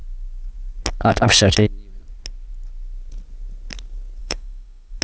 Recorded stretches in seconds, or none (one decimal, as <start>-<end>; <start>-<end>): 0.0-4.2